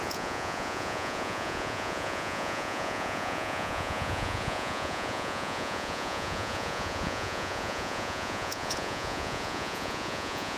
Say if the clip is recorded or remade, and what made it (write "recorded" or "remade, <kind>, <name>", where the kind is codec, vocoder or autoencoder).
remade, vocoder, Vocos